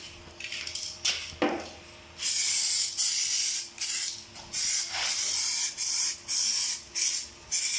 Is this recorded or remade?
recorded